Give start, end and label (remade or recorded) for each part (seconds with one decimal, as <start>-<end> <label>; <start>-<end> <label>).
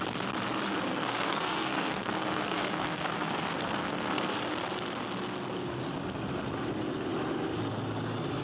0.0-0.9 recorded; 0.9-4.4 remade; 4.4-8.4 recorded